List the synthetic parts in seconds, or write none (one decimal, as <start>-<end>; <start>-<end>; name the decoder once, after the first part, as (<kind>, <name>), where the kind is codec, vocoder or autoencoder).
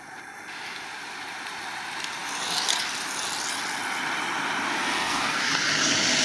4.8-5.5 (codec, SNAC)